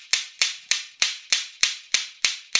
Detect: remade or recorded recorded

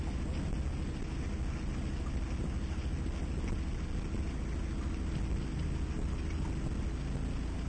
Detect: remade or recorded recorded